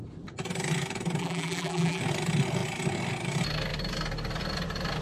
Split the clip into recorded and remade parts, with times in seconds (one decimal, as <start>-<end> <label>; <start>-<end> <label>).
0.0-1.2 recorded; 1.2-2.0 remade; 2.0-5.0 recorded